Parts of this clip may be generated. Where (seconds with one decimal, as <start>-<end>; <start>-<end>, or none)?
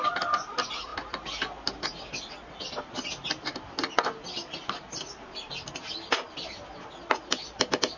none